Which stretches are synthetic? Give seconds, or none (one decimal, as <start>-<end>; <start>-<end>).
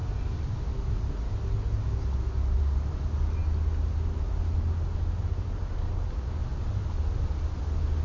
none